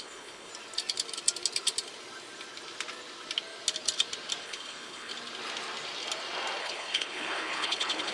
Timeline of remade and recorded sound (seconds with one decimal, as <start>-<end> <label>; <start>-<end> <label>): 0.0-0.5 remade; 0.5-4.4 recorded; 4.4-5.1 remade; 5.1-6.6 recorded; 6.6-8.1 remade